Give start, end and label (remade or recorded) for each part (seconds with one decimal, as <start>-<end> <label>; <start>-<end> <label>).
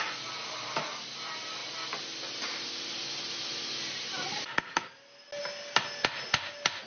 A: 0.0-6.9 recorded